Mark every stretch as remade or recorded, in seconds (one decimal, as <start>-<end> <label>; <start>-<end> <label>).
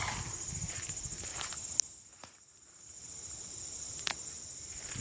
0.0-5.0 recorded